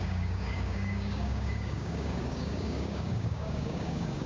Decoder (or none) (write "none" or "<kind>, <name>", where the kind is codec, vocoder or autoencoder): codec, DAC